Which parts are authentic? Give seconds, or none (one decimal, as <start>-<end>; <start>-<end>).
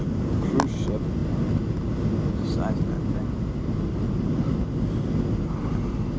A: 0.0-6.2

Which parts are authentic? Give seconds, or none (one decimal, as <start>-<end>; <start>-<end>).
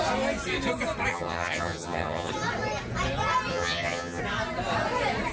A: 0.0-1.1; 2.3-3.5; 4.2-5.3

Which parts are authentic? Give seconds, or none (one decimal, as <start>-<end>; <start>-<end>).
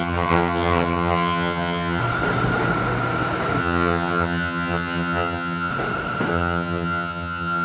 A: 2.0-3.6; 5.7-6.3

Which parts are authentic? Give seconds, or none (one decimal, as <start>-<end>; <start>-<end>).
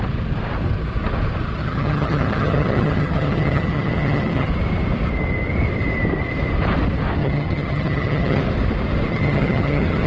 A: 0.0-1.6; 4.5-7.2; 8.4-9.1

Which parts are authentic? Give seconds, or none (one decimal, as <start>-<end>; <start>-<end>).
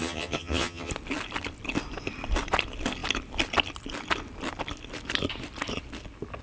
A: 0.9-6.4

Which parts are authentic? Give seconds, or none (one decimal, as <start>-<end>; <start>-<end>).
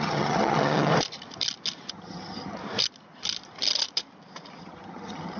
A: 0.9-1.9; 2.6-4.6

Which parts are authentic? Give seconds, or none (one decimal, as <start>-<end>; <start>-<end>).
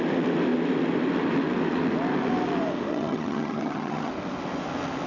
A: 0.0-2.9; 4.1-5.1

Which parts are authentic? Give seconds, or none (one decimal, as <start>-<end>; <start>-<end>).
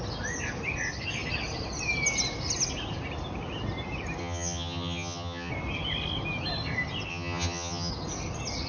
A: 0.0-4.2; 5.5-7.1; 7.9-8.7